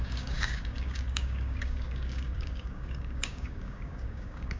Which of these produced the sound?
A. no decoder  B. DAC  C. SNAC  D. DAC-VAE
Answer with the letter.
B